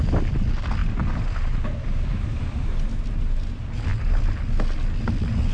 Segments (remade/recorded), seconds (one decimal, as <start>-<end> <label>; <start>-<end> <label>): 0.0-5.5 recorded